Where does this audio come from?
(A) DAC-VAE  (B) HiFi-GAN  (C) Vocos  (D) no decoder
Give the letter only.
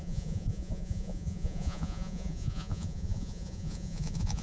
C